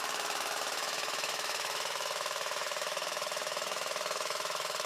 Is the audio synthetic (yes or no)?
yes